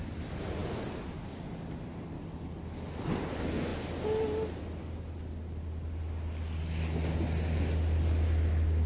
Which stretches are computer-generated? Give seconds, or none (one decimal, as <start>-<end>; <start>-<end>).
none